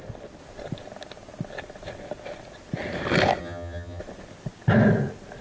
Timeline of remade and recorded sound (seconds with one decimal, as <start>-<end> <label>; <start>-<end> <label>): 0.0-3.4 recorded; 3.4-4.0 remade; 4.0-5.4 recorded